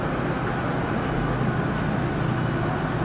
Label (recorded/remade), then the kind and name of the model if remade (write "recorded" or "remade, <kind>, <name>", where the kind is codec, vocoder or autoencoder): recorded